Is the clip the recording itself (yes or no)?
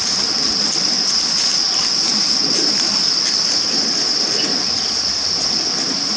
yes